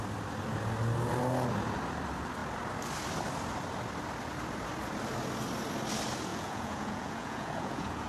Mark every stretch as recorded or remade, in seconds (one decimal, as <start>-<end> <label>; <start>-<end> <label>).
0.0-6.3 recorded; 6.3-8.1 remade